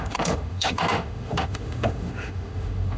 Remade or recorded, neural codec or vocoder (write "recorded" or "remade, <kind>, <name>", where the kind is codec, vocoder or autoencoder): remade, autoencoder, DAC-VAE